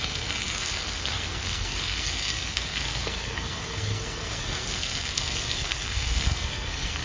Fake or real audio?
fake